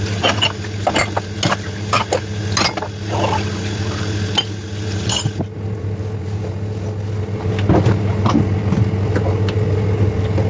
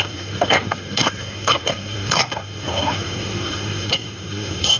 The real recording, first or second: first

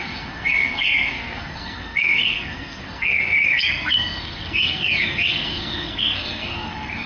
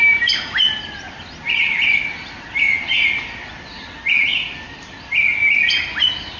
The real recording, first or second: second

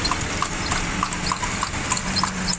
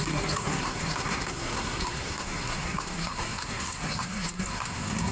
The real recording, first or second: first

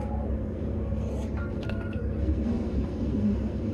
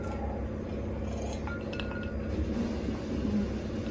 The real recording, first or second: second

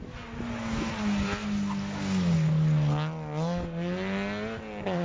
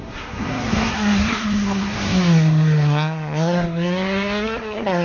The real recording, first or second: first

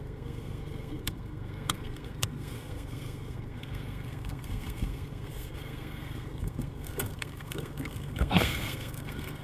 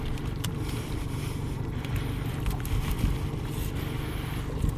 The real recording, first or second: second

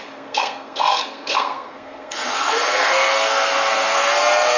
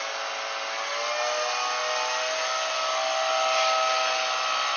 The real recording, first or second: second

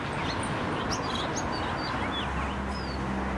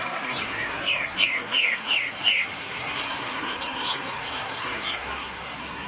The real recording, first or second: first